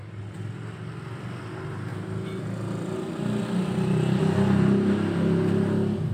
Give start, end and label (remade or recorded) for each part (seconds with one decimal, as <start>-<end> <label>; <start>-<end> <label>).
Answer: 0.0-6.1 recorded